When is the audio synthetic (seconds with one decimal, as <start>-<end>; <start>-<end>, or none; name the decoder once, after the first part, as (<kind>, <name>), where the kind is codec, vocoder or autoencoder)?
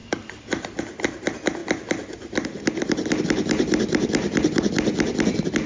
none